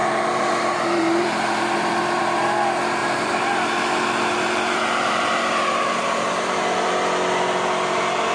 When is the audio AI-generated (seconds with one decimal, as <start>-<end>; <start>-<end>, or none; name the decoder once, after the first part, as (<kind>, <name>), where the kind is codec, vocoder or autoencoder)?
0.0-2.2 (vocoder, BigVGAN v2); 3.0-6.9